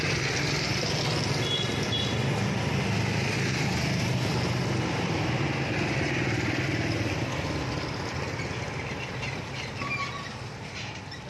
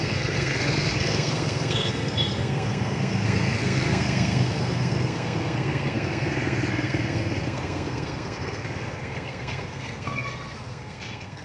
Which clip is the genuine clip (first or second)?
first